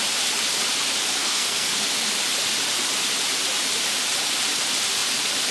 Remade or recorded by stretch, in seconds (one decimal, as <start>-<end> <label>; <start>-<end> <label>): 0.0-1.2 recorded; 1.2-1.7 remade; 1.7-5.5 recorded